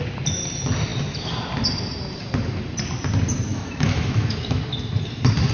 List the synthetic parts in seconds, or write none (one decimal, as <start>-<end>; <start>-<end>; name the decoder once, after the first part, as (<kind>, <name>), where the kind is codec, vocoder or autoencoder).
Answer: 3.5-4.6 (autoencoder, DAC-VAE)